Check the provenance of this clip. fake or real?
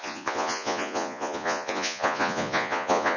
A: fake